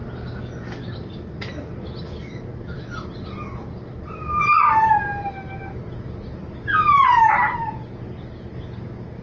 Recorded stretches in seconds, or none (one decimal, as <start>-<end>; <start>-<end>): 0.0-9.2